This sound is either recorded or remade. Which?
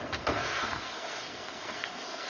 remade